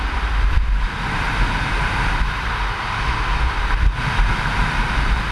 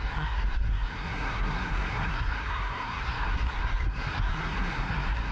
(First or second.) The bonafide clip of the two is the first